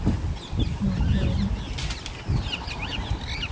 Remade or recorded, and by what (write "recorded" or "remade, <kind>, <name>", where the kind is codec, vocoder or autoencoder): recorded